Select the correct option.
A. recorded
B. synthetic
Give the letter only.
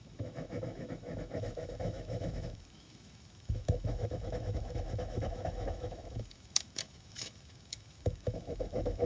B